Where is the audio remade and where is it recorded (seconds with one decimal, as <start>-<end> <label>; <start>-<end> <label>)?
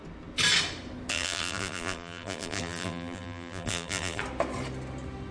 0.0-1.1 recorded; 1.1-4.2 remade; 4.2-5.3 recorded